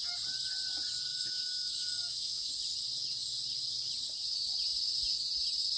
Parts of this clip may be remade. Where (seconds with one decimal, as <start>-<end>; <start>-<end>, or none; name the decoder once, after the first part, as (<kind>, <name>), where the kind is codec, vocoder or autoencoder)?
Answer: 1.1-2.5 (autoencoder, DAC-VAE)

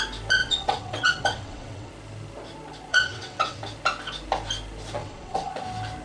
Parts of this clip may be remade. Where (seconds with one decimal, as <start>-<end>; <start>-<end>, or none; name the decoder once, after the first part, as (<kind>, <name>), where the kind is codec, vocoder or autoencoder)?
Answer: 0.4-1.9 (vocoder, WaveNeXt); 2.9-3.6; 5.0-5.5